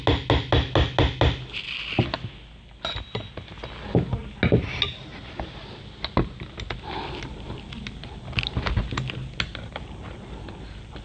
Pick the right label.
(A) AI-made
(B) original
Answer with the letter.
B